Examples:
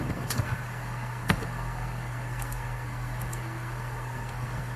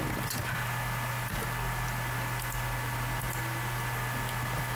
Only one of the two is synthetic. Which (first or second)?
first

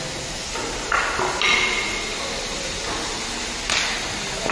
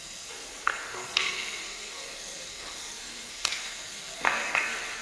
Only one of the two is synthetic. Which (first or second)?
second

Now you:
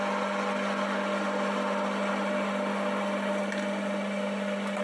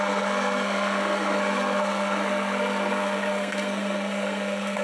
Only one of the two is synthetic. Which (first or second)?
second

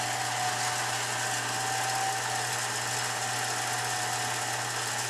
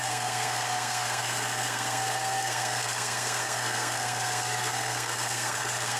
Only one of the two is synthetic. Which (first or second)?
second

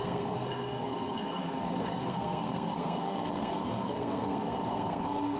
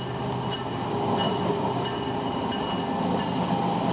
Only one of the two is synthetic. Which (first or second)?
first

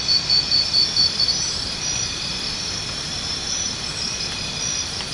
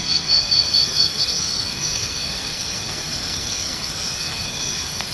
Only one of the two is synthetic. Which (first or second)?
second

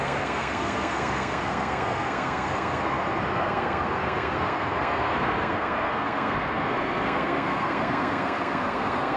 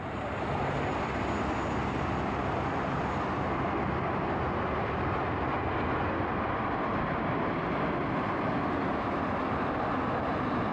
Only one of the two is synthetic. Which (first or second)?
first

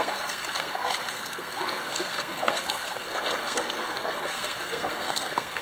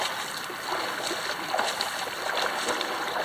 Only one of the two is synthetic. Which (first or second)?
first